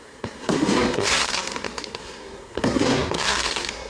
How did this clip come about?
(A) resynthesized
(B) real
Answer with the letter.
A